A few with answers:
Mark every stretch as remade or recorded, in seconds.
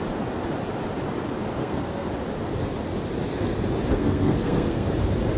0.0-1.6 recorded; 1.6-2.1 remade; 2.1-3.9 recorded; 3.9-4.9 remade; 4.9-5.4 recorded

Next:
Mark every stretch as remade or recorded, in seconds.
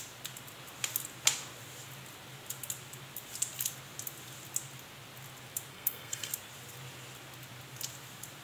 0.0-5.7 recorded; 5.7-6.3 remade; 6.3-8.4 recorded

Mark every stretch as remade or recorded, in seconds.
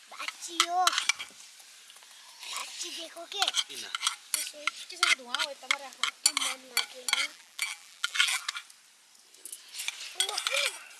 0.0-7.3 recorded; 7.3-8.4 remade; 8.4-11.0 recorded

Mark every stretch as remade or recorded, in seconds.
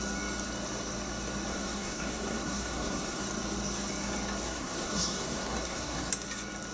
0.0-1.5 recorded; 1.5-3.2 remade; 3.2-4.4 recorded; 4.4-6.1 remade; 6.1-6.7 recorded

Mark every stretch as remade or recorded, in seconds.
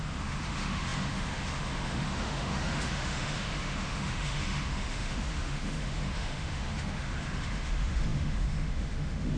0.0-9.4 remade